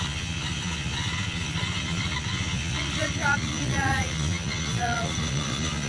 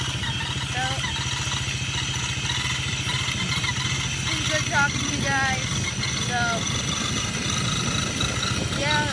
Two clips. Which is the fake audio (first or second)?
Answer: first